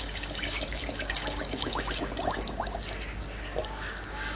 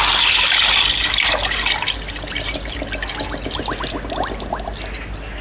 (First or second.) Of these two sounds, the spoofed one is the first